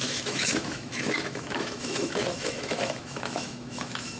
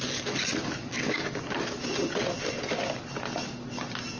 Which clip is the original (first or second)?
second